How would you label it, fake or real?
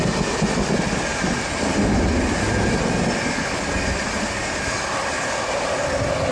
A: real